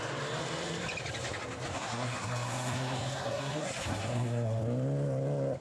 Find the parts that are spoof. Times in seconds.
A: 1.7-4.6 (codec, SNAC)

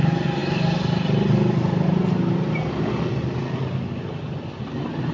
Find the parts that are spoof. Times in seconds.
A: none